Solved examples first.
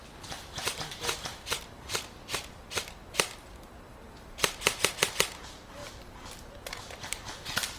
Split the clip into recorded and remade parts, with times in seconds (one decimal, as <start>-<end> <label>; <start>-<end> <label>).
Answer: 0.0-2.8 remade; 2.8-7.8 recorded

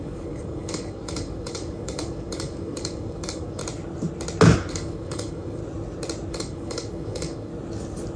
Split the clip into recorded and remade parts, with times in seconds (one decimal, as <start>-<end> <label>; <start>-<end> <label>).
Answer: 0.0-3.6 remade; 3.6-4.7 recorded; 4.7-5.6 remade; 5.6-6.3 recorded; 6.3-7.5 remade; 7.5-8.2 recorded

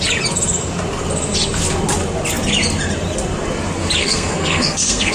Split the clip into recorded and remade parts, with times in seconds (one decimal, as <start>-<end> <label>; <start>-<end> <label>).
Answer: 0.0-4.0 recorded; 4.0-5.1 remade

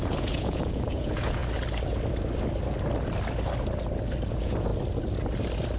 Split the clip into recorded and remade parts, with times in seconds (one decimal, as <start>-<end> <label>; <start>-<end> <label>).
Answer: 0.0-1.4 remade; 1.4-4.3 recorded; 4.3-4.7 remade; 4.7-5.8 recorded